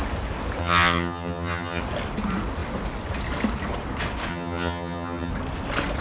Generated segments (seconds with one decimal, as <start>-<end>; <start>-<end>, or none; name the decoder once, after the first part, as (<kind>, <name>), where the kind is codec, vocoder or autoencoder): 0.6-1.8 (vocoder, HiFi-GAN); 4.3-5.3